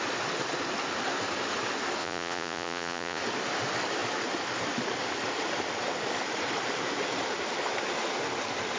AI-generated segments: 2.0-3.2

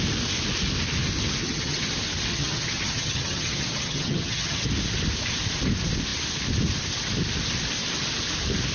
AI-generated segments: 1.4-1.9; 2.3-4.7

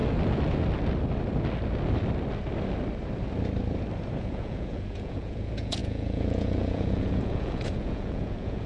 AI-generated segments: 4.2-8.7

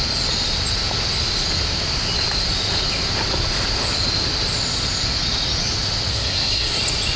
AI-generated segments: 6.1-6.8